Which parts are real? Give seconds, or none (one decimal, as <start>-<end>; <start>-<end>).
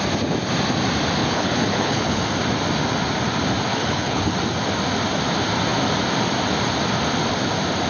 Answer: 0.0-1.2; 2.2-3.7; 4.3-7.9